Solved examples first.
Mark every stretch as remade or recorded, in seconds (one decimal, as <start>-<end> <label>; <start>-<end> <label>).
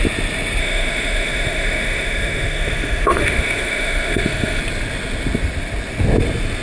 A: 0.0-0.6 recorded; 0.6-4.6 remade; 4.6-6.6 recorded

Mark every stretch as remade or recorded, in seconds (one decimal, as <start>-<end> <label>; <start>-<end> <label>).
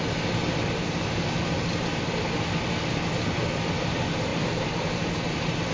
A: 0.0-4.3 recorded; 4.3-5.7 remade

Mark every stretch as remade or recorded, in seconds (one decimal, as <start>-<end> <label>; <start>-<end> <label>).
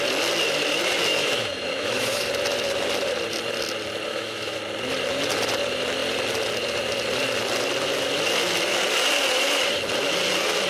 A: 0.0-1.1 recorded; 1.1-2.3 remade; 2.3-4.1 recorded; 4.1-4.6 remade; 4.6-10.7 recorded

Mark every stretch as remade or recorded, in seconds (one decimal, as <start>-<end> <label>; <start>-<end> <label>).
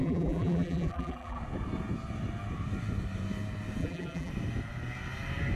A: 0.0-1.4 remade; 1.4-3.8 recorded; 3.8-4.3 remade; 4.3-5.6 recorded